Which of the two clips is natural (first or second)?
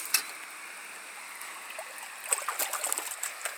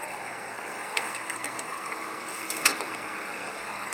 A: first